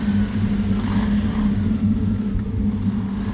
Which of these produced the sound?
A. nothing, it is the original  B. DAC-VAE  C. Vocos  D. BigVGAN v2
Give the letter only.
A